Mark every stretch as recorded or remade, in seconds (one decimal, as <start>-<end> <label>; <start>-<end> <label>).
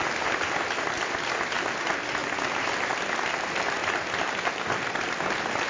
0.0-5.7 recorded